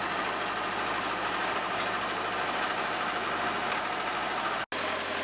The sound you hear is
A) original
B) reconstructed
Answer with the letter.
A